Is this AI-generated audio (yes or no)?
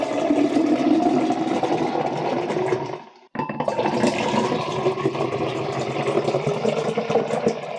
no